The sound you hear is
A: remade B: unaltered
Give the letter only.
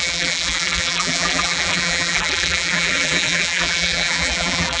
A